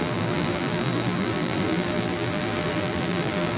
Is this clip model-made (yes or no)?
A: yes